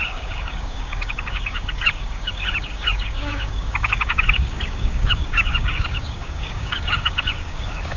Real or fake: fake